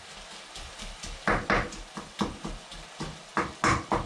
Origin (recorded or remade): recorded